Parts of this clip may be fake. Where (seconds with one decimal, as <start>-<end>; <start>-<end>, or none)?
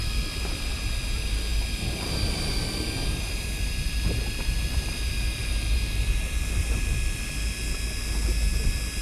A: 1.5-6.8